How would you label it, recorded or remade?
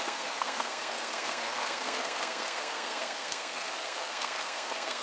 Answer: remade